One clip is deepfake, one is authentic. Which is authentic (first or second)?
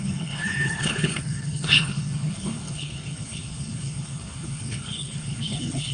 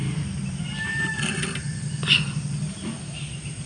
second